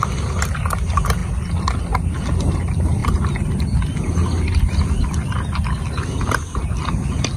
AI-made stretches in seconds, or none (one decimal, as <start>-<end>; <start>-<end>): none